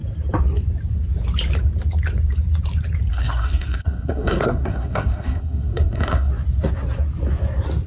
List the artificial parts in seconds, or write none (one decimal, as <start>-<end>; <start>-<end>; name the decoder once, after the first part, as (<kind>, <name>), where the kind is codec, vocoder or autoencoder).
3.1-6.3 (codec, SNAC)